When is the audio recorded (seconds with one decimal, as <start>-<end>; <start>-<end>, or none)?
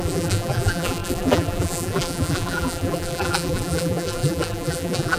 none